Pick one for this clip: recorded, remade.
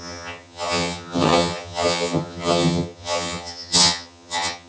remade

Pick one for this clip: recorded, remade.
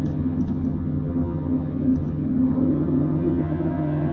remade